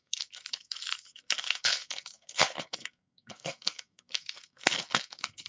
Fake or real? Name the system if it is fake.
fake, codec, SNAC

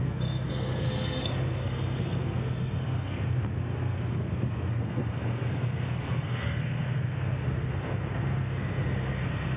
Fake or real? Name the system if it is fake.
fake, codec, SNAC